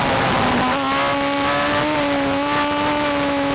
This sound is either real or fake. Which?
real